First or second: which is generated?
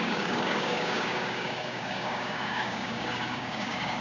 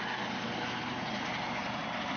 first